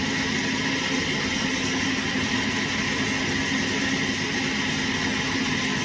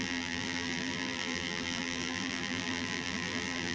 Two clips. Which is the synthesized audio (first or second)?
second